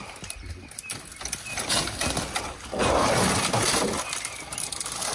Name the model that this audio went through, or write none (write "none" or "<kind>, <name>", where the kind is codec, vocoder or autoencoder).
none